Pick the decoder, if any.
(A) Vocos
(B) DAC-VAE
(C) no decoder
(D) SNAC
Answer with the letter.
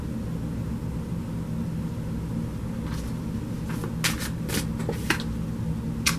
C